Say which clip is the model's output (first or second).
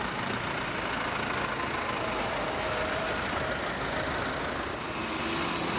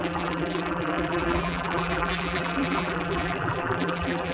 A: second